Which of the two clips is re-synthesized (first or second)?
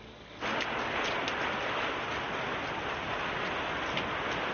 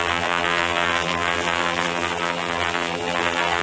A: second